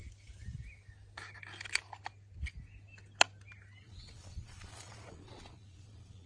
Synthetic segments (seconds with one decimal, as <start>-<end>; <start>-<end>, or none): 3.8-6.3